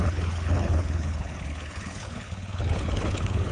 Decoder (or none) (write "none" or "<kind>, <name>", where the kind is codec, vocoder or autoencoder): codec, HILCodec